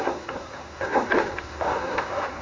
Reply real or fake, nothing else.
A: fake